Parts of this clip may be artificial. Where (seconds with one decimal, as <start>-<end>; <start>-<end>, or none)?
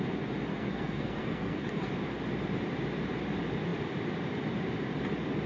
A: 0.5-1.9